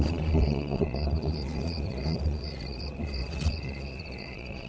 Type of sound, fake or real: fake